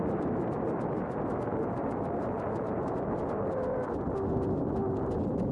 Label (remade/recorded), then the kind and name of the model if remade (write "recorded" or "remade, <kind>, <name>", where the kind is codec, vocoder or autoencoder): recorded